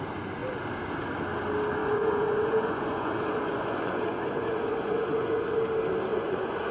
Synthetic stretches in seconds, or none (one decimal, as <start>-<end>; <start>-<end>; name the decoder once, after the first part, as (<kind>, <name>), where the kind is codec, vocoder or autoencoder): 1.8-5.6 (vocoder, Vocos); 6.1-6.7